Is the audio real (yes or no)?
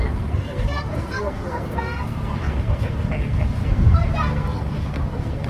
no